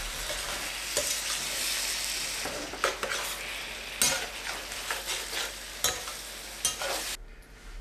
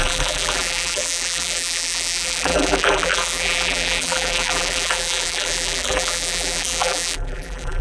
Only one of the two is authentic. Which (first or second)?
first